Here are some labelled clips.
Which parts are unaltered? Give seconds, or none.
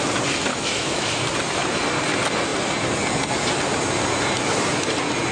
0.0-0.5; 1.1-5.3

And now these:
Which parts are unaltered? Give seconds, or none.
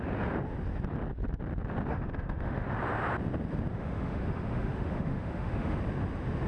0.0-1.9; 2.7-3.7; 5.8-6.5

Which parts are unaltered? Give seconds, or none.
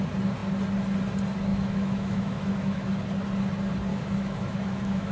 0.0-1.5; 2.9-3.9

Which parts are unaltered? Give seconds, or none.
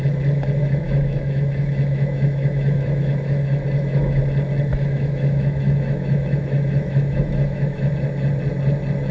0.0-0.6; 4.2-4.7; 7.9-9.1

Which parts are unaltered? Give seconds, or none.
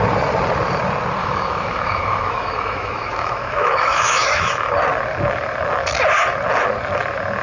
0.0-1.2; 4.7-7.4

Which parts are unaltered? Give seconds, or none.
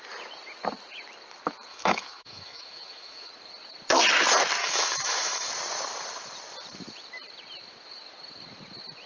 0.0-1.7; 3.3-4.6; 5.5-9.1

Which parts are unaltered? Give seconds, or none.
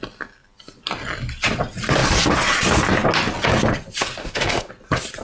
0.0-4.2; 4.7-5.2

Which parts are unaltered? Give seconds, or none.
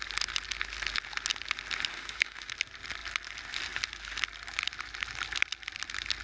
0.0-1.9; 2.5-6.2